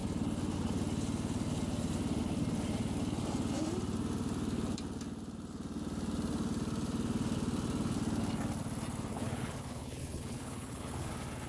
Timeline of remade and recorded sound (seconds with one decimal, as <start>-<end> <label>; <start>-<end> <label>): 0.0-9.1 recorded; 9.1-11.1 remade; 11.1-11.5 recorded